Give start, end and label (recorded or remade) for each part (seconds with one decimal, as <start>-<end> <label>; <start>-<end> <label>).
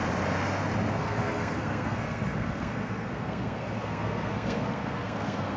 0.0-0.9 recorded; 0.9-5.6 remade